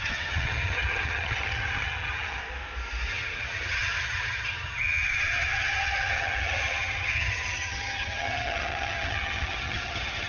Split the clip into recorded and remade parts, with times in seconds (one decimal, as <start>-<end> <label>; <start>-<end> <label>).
0.0-2.4 remade; 2.4-3.1 recorded; 3.1-10.3 remade